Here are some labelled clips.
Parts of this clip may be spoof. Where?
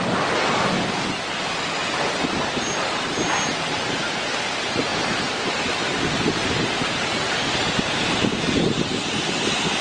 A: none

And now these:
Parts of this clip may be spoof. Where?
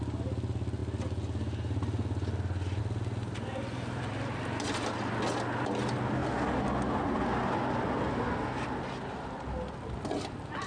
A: none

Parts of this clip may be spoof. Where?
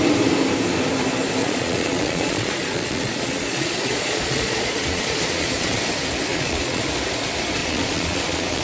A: 1.4-5.8 (vocoder, Vocos); 6.3-6.8; 7.6-8.6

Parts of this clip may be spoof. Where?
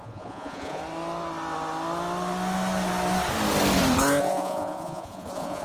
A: 0.0-0.8 (vocoder, Vocos); 4.2-5.6